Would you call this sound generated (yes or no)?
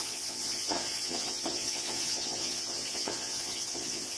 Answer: yes